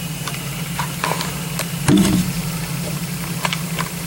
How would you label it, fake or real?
fake